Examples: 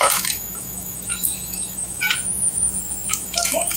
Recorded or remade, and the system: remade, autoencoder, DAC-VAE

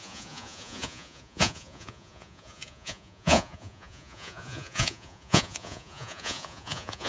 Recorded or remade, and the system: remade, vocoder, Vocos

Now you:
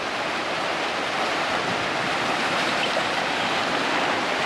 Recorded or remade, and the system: remade, vocoder, BigVGAN v2